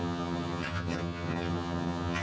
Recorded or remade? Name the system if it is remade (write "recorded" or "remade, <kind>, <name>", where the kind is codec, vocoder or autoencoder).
remade, vocoder, HiFi-GAN